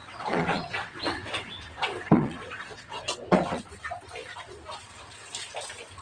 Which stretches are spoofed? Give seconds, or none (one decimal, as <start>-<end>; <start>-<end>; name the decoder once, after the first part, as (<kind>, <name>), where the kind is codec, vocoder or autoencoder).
0.0-3.6 (vocoder, WaveNeXt); 4.8-5.3